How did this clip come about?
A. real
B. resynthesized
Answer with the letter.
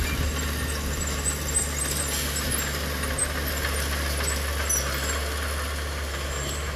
A